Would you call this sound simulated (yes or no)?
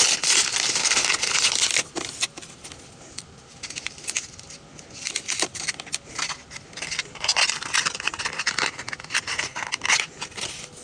no